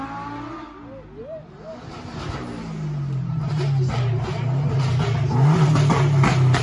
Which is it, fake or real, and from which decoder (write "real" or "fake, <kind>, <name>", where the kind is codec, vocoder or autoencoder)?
real